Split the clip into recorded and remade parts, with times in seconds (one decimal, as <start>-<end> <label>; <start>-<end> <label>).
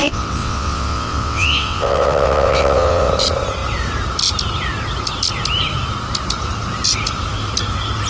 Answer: 0.0-3.1 remade; 3.1-8.1 recorded